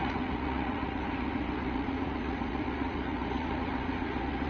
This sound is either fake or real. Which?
fake